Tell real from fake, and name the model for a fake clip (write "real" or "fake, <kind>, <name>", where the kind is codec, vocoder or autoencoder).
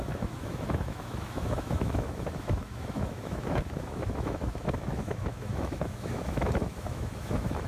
fake, autoencoder, DAC-VAE